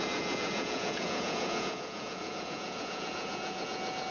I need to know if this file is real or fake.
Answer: fake